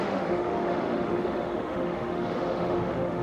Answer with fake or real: fake